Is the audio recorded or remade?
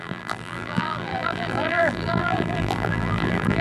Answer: remade